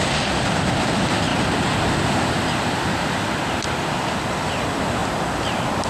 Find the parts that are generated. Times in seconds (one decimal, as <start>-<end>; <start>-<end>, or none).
5.0-5.9